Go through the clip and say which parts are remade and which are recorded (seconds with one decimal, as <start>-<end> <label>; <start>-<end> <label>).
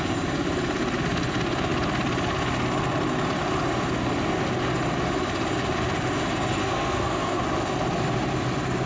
0.0-6.6 recorded; 6.6-7.4 remade; 7.4-8.9 recorded